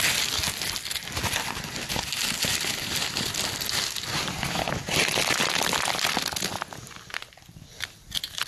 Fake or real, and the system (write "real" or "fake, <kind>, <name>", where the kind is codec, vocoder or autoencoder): real